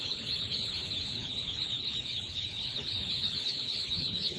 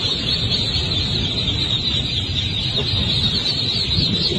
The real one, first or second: second